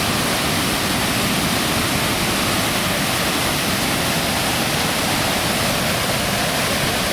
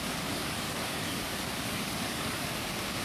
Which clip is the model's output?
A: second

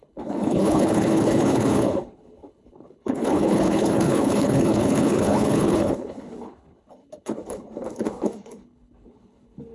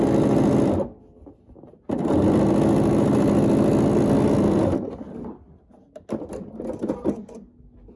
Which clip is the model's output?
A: first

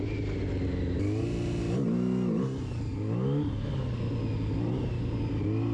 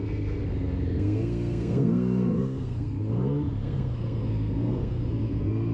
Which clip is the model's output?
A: second